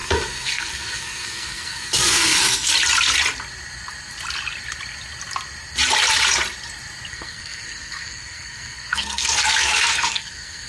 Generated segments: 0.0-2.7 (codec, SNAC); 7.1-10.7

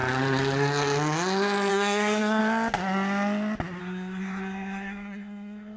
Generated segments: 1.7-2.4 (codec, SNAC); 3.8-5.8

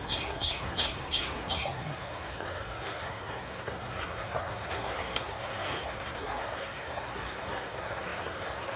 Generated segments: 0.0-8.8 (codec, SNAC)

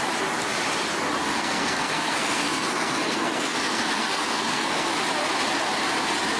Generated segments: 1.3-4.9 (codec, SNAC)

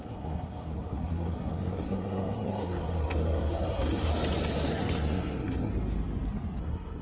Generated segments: 0.0-4.1 (codec, SNAC); 4.7-5.7; 6.6-7.0

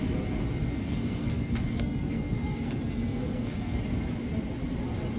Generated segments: 0.7-3.8 (codec, SNAC)